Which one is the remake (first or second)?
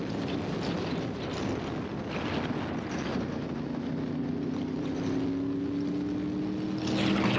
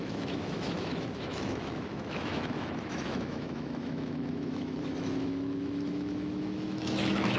second